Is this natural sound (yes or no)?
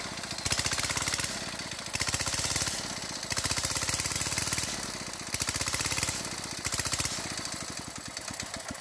yes